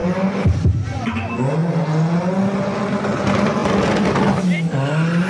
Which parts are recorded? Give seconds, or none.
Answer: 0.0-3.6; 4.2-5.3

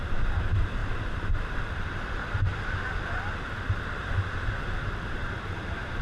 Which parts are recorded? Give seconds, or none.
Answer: 2.5-4.8

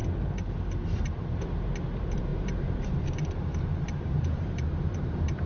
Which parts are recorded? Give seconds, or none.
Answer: 0.0-0.6

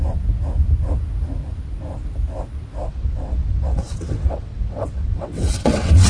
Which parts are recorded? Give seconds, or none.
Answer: 0.0-2.8

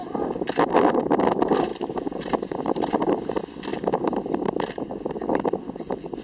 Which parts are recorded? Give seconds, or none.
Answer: 0.0-1.7; 3.3-3.7; 4.9-6.2

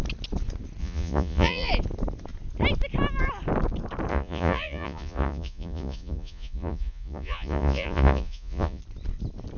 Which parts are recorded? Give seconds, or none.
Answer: 0.0-0.8; 1.7-4.1; 8.8-9.6

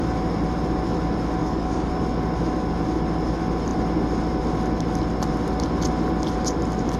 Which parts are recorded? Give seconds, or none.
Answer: 0.0-1.4; 1.9-7.0

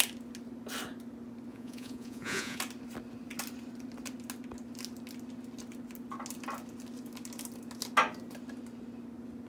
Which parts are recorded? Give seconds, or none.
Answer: 0.0-1.5; 2.6-9.5